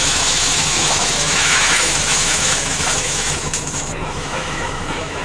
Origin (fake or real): fake